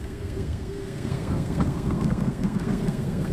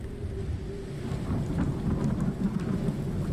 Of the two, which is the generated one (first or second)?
first